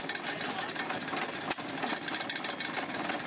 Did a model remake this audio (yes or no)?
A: no